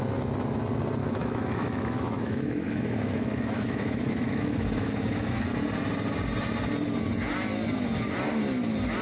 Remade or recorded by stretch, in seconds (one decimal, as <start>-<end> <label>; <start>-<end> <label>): 0.0-1.0 recorded; 1.0-5.4 remade; 5.4-9.0 recorded